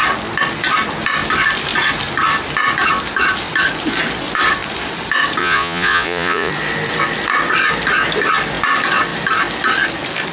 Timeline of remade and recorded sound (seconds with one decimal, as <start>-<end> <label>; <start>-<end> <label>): 0.0-5.4 recorded; 5.4-6.5 remade; 6.5-10.3 recorded